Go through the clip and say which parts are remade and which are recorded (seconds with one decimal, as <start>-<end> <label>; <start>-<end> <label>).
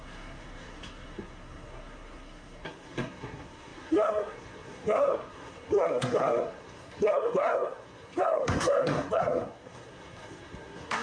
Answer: 0.0-11.0 remade